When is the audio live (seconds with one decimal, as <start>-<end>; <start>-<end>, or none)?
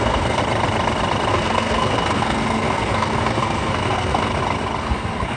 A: 0.4-1.3; 4.3-4.8